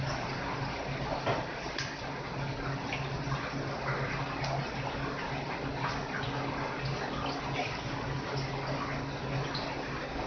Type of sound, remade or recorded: recorded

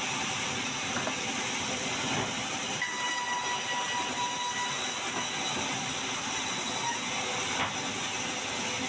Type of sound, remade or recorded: recorded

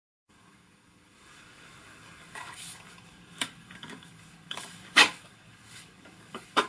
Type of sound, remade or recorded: remade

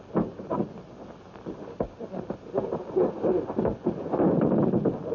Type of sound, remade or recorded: recorded